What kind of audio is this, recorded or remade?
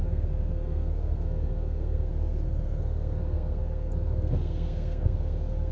remade